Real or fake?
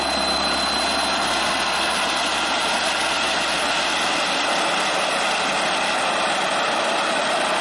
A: real